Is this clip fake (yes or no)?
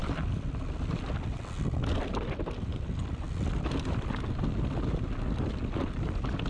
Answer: no